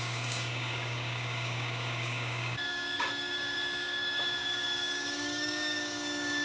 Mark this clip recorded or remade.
remade